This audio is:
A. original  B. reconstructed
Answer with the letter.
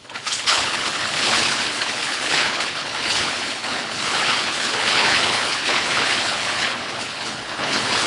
B